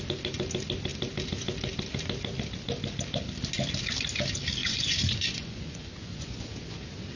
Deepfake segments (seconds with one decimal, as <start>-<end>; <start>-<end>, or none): 4.6-6.8